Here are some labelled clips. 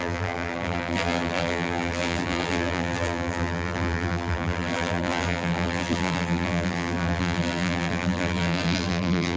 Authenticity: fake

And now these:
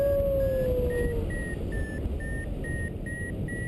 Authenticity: real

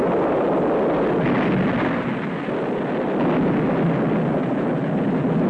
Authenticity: real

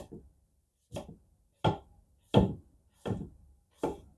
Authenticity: real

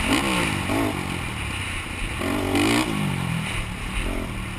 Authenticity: real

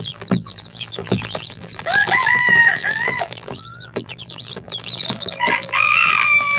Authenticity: fake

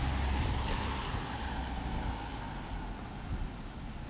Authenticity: real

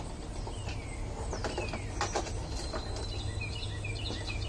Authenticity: real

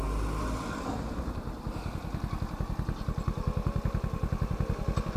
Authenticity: real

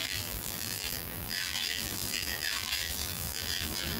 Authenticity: fake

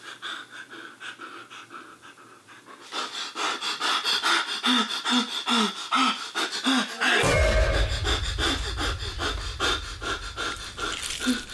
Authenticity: real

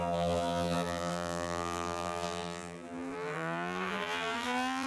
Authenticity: fake